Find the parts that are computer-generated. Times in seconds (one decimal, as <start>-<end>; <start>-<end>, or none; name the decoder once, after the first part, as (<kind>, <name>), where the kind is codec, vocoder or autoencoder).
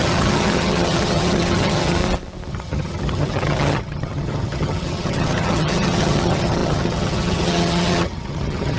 0.0-2.0 (vocoder, HiFi-GAN); 2.5-8.8